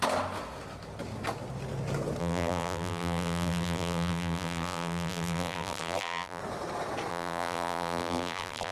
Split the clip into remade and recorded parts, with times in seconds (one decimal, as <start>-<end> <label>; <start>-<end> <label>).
0.0-2.2 recorded; 2.2-6.4 remade; 6.4-7.1 recorded; 7.1-8.7 remade